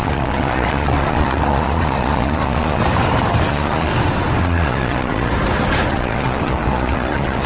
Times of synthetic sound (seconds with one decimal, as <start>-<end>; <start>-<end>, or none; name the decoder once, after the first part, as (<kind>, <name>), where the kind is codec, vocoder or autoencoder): 0.0-2.8 (vocoder, Vocos); 3.5-3.9; 4.4-5.3; 5.9-7.5